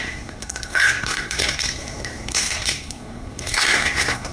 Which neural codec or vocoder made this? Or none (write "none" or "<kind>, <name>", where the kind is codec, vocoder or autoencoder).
codec, SNAC